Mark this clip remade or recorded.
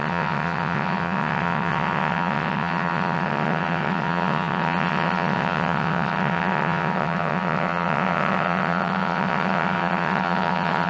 remade